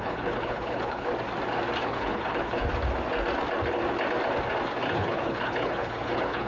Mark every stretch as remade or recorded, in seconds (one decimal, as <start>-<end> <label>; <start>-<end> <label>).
0.0-1.1 remade; 1.1-1.8 recorded; 1.8-2.6 remade; 2.6-4.9 recorded; 4.9-6.5 remade